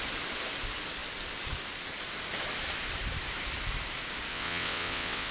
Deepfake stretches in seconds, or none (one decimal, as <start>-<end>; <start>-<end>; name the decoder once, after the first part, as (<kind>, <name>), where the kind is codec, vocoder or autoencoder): 4.3-5.3 (vocoder, WaveNeXt)